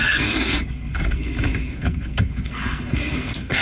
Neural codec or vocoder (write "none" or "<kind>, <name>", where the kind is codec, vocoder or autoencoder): codec, SNAC